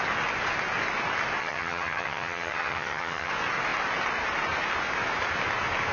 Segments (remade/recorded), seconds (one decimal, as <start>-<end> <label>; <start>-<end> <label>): 0.0-1.4 recorded; 1.4-3.3 remade; 3.3-5.9 recorded